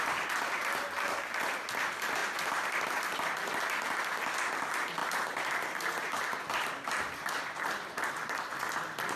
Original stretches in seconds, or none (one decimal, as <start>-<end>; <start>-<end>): 0.0-2.2; 3.0-5.0; 8.1-9.2